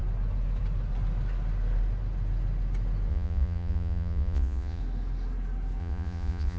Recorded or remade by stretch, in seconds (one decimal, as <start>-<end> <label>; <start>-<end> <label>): 0.0-3.1 recorded; 3.1-4.8 remade; 4.8-5.8 recorded; 5.8-6.6 remade